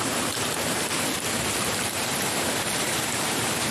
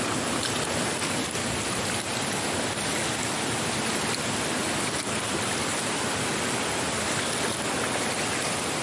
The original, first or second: second